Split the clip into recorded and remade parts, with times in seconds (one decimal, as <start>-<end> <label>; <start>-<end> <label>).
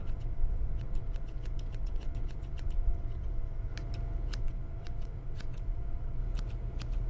0.0-3.7 remade; 3.7-4.4 recorded; 4.4-6.2 remade; 6.2-7.1 recorded